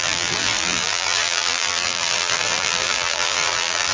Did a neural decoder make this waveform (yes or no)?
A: yes